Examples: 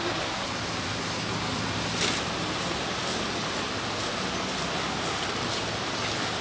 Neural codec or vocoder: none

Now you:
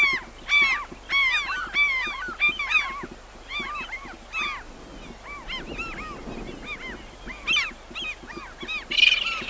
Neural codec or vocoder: none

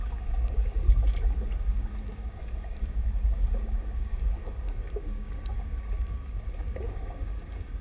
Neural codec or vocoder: codec, DAC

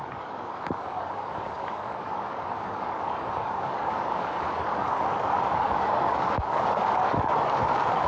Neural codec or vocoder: codec, DAC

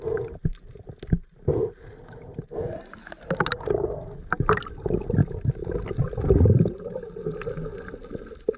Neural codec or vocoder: none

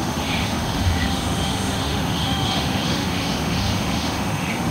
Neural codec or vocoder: autoencoder, DAC-VAE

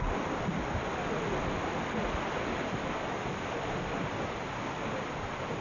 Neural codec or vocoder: none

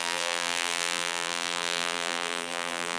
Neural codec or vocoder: vocoder, BigVGAN v2